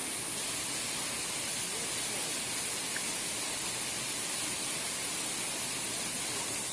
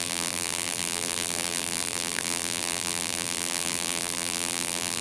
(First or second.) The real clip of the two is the first